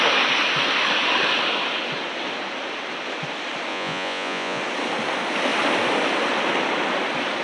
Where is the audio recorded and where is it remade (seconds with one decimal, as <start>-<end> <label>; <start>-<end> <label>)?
0.0-3.7 recorded; 3.7-4.6 remade; 4.6-7.4 recorded

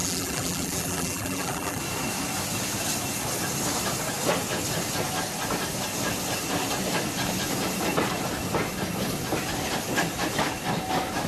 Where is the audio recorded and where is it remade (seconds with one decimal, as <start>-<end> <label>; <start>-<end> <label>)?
0.0-1.8 remade; 1.8-11.3 recorded

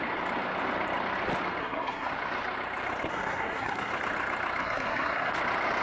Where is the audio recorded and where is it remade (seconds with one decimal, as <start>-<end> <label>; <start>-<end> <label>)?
0.0-1.6 recorded; 1.6-2.1 remade; 2.1-3.1 recorded; 3.1-3.9 remade; 3.9-4.6 recorded; 4.6-5.3 remade; 5.3-5.8 recorded